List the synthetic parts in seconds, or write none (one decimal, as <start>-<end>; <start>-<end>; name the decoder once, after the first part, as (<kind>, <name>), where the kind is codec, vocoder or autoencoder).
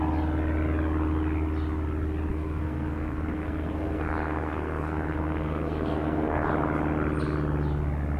2.3-6.5 (codec, SNAC)